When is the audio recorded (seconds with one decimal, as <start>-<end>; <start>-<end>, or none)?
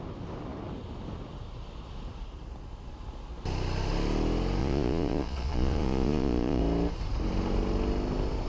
0.0-4.6; 6.6-8.5